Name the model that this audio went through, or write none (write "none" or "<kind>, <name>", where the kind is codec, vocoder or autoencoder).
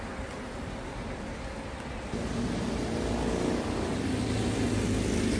none